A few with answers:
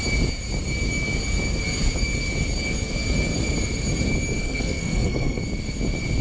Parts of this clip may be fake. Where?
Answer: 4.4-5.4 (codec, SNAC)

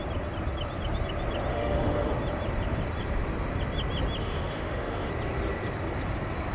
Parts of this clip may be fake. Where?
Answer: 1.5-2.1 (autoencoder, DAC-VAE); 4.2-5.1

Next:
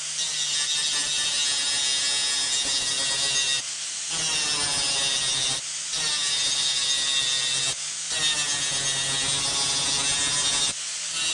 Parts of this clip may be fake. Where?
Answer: none

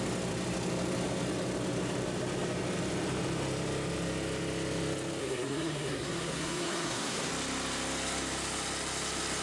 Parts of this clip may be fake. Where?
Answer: 5.2-7.3 (codec, SNAC)

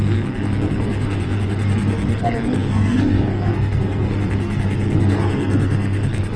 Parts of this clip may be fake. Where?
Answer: 0.0-6.4 (codec, SNAC)